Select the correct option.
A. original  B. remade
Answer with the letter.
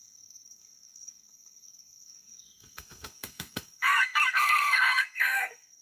B